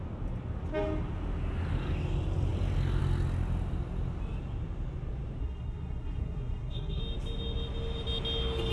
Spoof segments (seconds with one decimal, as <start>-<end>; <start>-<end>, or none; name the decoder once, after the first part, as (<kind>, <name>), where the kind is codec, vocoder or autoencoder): 5.4-7.0 (codec, SNAC)